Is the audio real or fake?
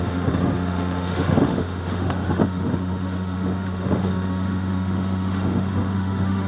fake